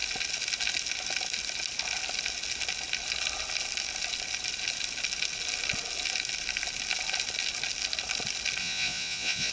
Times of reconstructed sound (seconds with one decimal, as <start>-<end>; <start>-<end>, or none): 8.6-9.5